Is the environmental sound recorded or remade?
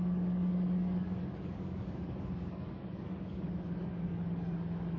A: remade